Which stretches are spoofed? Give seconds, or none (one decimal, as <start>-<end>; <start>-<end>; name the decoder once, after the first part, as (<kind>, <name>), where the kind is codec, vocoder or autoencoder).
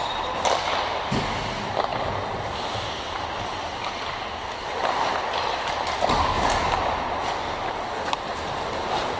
none